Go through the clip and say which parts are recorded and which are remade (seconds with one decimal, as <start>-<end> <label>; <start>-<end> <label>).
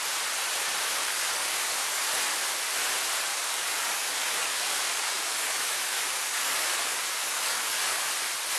0.0-1.0 recorded; 1.0-2.1 remade; 2.1-3.3 recorded; 3.3-8.1 remade; 8.1-8.6 recorded